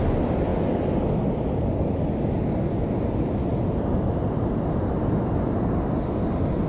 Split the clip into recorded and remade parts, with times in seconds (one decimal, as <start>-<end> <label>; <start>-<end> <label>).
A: 0.0-6.7 recorded